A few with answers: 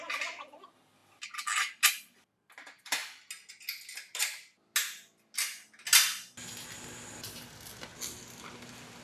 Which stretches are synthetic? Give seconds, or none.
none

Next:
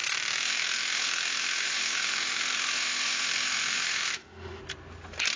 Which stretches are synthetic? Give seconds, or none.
0.0-4.6 (autoencoder, DAC-VAE)

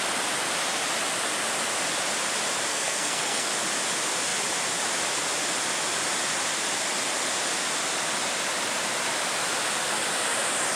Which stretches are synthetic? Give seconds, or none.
2.7-3.5 (codec, SNAC)

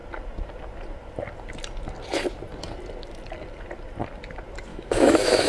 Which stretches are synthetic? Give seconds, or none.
4.7-5.5 (autoencoder, DAC-VAE)

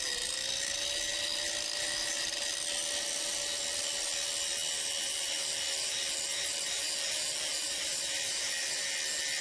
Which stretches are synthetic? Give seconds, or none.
6.3-6.9 (vocoder, BigVGAN v2); 7.6-8.9